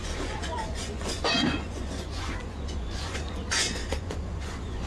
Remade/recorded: remade